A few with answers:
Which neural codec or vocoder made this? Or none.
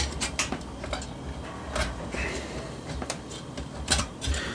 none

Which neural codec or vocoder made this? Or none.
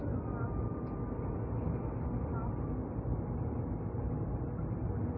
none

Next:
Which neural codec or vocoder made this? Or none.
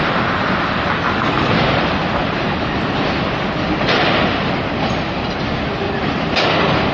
none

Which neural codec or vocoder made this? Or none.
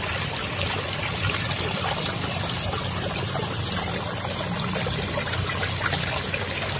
vocoder, BigVGAN v2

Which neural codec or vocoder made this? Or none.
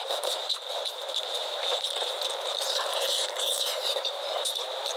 vocoder, BigVGAN v2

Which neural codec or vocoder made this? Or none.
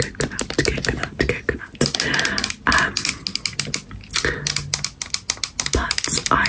none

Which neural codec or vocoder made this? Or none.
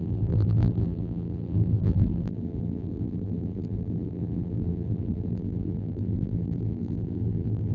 vocoder, BigVGAN v2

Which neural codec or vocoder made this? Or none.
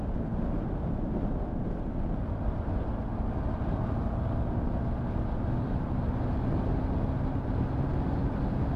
none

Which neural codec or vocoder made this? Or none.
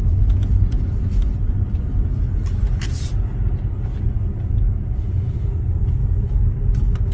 none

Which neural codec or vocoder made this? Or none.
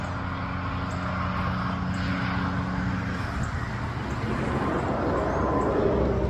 none